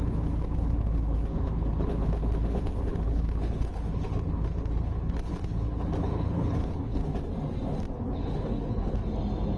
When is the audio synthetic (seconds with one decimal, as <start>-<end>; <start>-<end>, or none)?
0.0-7.0; 8.0-9.0